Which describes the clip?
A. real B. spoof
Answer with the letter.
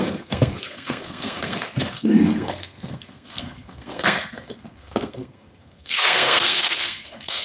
B